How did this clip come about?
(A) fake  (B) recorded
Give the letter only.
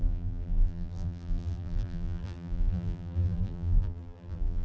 A